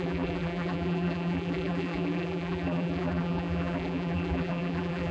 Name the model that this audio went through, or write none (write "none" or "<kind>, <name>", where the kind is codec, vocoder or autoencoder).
vocoder, BigVGAN v2